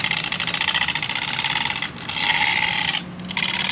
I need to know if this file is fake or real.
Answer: real